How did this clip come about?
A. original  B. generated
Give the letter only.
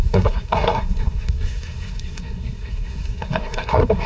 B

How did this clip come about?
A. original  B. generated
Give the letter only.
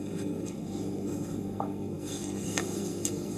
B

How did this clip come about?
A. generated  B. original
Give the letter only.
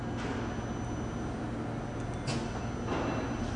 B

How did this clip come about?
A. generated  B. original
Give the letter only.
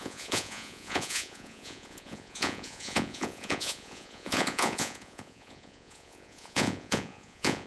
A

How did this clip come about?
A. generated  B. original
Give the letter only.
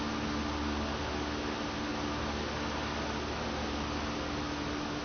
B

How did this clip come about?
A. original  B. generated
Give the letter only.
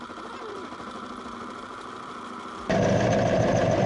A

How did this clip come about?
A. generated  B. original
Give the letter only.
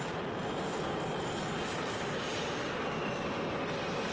B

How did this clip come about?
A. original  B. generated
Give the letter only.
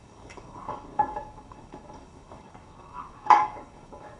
B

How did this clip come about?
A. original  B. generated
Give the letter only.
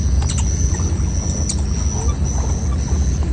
A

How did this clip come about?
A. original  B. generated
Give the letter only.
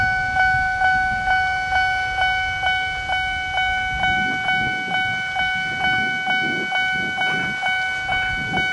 A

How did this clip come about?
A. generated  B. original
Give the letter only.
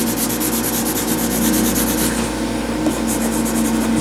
B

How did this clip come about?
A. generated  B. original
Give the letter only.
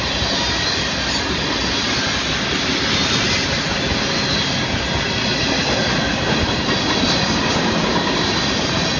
B